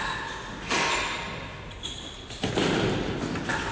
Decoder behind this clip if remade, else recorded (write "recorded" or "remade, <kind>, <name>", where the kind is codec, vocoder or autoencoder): recorded